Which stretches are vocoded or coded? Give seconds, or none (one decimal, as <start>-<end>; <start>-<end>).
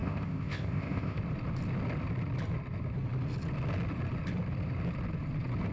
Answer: 0.0-1.2